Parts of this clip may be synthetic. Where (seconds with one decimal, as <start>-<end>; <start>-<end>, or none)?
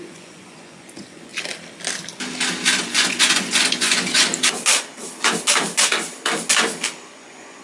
0.0-1.3; 2.8-4.3; 7.0-7.6